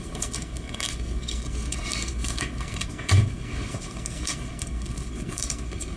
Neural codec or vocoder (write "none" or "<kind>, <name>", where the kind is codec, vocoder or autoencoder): codec, SNAC